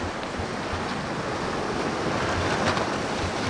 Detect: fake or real real